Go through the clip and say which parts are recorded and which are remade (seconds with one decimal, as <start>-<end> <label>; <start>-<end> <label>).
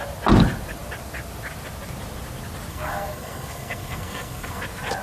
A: 0.0-2.7 recorded; 2.7-4.6 remade; 4.6-5.0 recorded